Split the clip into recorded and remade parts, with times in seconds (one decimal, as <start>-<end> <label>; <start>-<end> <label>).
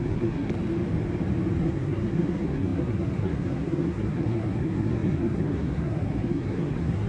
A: 0.0-0.5 remade; 0.5-1.6 recorded; 1.6-7.1 remade